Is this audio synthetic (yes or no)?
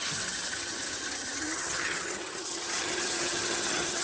yes